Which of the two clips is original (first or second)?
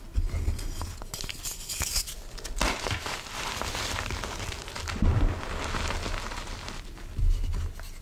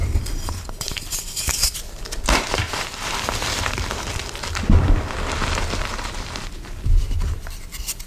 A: first